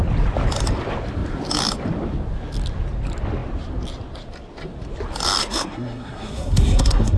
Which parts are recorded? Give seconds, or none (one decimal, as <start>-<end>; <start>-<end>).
0.0-5.4